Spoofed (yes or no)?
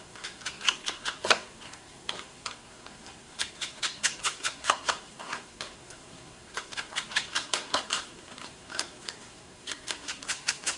yes